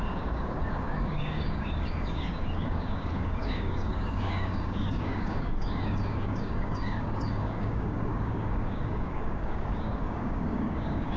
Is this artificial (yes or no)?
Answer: yes